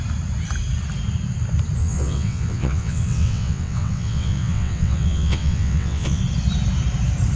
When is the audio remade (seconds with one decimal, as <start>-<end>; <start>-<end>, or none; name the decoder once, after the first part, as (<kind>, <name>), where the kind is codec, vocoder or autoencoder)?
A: 1.8-6.2 (vocoder, WaveNeXt)